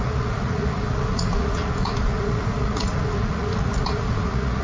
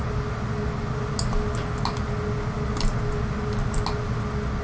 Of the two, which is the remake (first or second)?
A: first